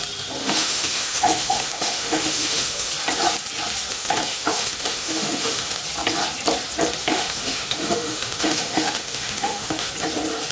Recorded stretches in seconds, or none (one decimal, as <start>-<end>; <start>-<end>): 0.0-0.4; 2.9-3.9; 5.8-7.0; 9.9-10.5